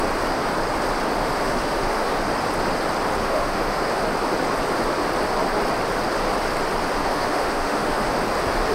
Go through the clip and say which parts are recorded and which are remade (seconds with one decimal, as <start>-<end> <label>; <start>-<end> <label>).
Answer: 0.0-1.2 recorded; 1.2-2.2 remade; 2.2-3.2 recorded; 3.2-3.9 remade; 3.9-7.0 recorded; 7.0-8.1 remade; 8.1-8.7 recorded